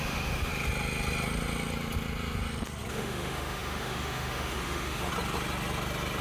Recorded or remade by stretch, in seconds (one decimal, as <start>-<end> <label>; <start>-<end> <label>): 0.0-0.5 remade; 0.5-2.9 recorded; 2.9-5.1 remade; 5.1-6.2 recorded